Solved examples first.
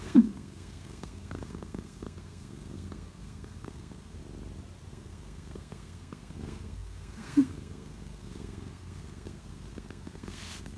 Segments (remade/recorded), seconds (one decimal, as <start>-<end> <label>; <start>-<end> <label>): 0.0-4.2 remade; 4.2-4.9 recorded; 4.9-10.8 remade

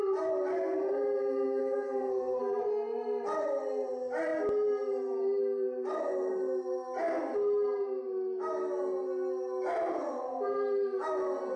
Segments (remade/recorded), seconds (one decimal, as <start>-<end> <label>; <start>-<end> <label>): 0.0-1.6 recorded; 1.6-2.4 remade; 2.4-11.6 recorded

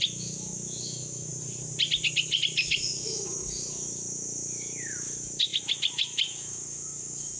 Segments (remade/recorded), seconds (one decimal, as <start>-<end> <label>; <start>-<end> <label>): 0.0-1.3 remade; 1.3-2.7 recorded; 2.7-7.4 remade

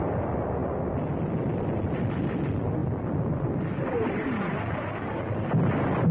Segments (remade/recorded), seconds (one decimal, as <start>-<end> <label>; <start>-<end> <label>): 0.0-6.1 recorded